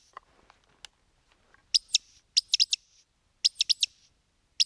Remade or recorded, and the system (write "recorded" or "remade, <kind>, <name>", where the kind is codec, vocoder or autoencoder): recorded